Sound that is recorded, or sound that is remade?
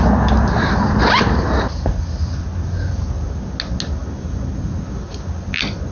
recorded